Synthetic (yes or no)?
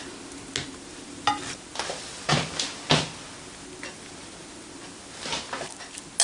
no